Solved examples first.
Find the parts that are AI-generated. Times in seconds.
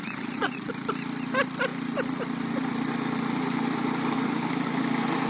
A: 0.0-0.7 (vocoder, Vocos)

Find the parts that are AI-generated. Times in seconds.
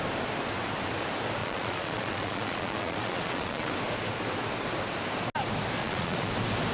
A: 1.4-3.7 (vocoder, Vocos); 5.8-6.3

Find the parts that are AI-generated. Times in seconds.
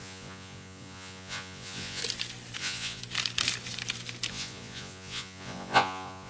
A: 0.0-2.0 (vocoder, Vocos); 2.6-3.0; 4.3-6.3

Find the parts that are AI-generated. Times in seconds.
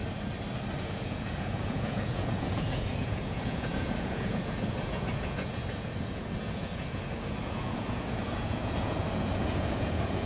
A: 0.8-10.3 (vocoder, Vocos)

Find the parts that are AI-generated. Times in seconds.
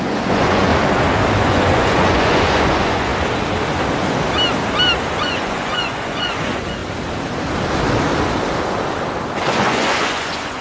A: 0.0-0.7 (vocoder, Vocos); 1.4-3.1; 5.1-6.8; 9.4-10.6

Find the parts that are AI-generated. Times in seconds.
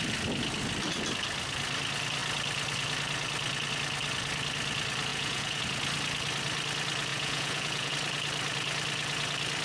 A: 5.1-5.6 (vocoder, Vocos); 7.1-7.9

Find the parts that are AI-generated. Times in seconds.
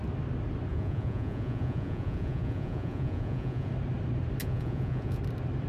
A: 0.7-3.7 (vocoder, Vocos); 4.4-5.2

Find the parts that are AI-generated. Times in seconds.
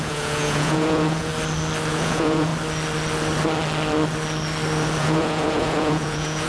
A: 0.0-1.3 (vocoder, Vocos); 1.9-2.5; 5.0-6.5